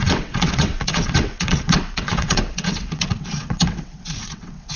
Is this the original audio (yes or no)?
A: no